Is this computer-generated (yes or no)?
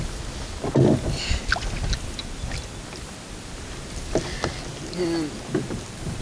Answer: no